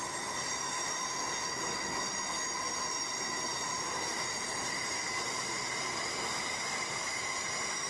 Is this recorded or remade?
recorded